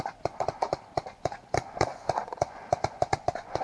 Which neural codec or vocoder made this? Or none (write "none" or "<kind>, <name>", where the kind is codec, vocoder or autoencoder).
vocoder, Vocos